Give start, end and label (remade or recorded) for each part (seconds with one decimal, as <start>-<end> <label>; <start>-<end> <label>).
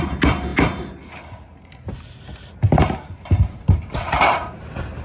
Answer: 0.0-5.0 recorded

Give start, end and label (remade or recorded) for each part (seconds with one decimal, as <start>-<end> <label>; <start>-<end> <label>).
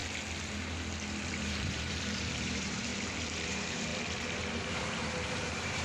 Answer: 0.0-1.3 recorded; 1.3-2.9 remade; 2.9-3.5 recorded; 3.5-3.9 remade; 3.9-4.5 recorded; 4.5-5.8 remade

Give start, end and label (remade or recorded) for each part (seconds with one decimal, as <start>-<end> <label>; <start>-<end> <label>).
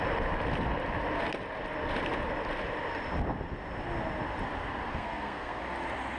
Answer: 0.0-4.9 recorded; 4.9-5.6 remade; 5.6-6.2 recorded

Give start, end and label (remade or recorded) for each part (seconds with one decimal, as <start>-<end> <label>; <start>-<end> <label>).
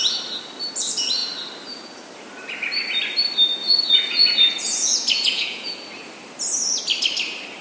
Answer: 0.0-3.6 recorded; 3.6-5.7 remade; 5.7-7.6 recorded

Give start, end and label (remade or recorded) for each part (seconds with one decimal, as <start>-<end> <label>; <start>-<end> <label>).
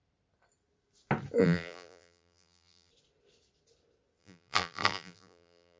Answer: 0.0-1.4 recorded; 1.4-2.9 remade; 2.9-4.2 recorded; 4.2-5.8 remade